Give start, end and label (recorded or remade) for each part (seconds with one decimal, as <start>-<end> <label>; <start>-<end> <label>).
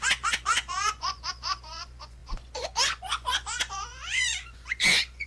0.0-5.3 remade